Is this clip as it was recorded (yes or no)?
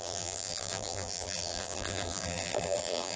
no